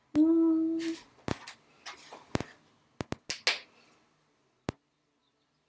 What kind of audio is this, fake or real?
real